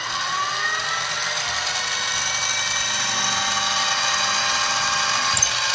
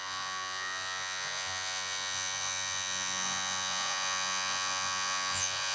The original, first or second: first